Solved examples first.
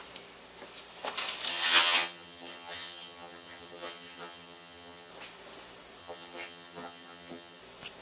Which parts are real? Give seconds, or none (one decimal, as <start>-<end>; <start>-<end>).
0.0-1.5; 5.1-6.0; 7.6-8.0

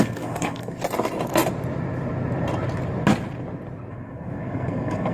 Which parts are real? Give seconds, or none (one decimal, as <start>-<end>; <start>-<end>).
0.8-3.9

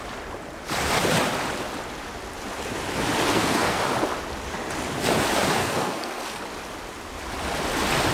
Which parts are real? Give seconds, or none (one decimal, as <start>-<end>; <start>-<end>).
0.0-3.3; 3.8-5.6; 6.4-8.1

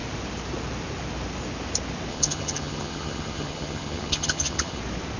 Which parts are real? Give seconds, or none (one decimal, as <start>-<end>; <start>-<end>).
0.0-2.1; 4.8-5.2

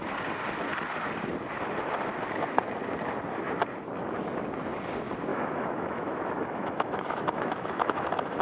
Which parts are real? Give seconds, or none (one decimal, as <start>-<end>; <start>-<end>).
0.0-5.3

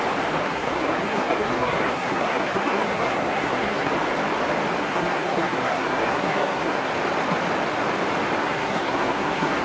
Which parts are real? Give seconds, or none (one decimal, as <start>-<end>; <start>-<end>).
0.0-0.4; 3.9-4.8; 6.9-8.4

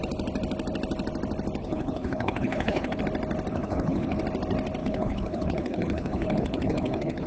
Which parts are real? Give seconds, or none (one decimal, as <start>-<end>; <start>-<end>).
0.0-1.6; 3.0-3.5; 4.2-4.8